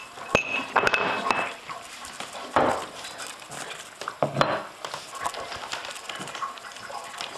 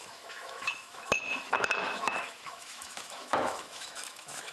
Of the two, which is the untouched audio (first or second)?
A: first